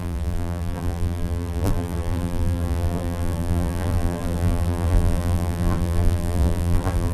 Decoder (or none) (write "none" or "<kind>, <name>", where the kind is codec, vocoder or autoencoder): vocoder, BigVGAN v2